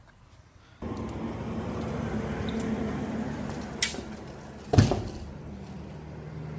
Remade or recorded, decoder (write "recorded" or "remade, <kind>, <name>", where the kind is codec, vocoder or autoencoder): recorded